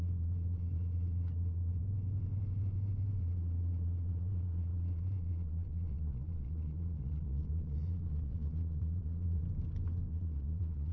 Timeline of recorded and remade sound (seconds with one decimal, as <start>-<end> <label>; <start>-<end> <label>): 0.0-1.8 remade; 1.8-3.2 recorded; 3.2-9.4 remade; 9.4-10.1 recorded; 10.1-10.9 remade